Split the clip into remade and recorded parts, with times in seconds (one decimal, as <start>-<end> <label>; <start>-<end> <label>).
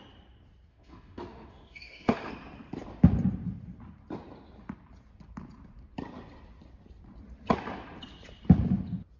0.0-0.7 recorded; 0.7-2.3 remade; 2.3-9.2 recorded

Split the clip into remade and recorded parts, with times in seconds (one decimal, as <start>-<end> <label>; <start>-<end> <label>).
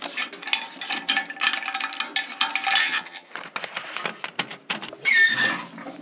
0.0-2.8 recorded; 2.8-3.3 remade; 3.3-6.0 recorded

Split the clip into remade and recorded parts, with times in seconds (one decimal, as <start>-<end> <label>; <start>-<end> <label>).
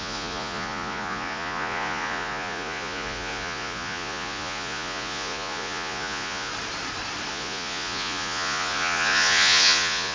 0.0-6.5 remade; 6.5-7.3 recorded; 7.3-10.1 remade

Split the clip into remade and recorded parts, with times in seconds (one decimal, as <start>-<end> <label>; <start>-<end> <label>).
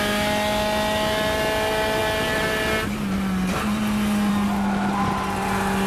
0.0-5.9 recorded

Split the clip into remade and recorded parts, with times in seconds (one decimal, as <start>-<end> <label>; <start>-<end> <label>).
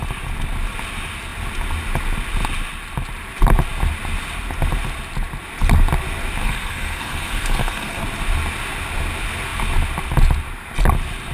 0.0-6.4 recorded; 6.4-8.0 remade; 8.0-11.3 recorded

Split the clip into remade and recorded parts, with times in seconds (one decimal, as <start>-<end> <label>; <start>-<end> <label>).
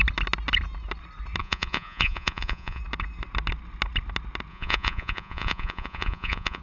0.0-1.4 recorded; 1.4-2.8 remade; 2.8-4.5 recorded; 4.5-6.6 remade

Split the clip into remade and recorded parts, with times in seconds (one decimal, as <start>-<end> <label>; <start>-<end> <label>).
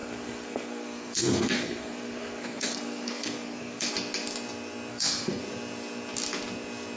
0.0-3.9 remade; 3.9-4.9 recorded; 4.9-5.4 remade; 5.4-7.0 recorded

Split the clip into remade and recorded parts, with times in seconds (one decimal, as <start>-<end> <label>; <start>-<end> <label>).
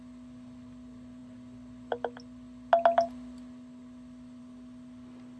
0.0-5.4 recorded